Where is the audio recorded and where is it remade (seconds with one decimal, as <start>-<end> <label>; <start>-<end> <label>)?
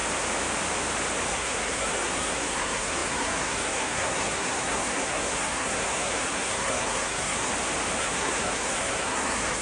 0.0-1.3 recorded; 1.3-7.5 remade; 7.5-8.0 recorded; 8.0-9.6 remade